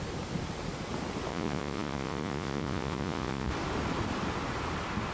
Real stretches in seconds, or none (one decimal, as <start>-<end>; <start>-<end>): 0.0-1.3; 3.5-5.1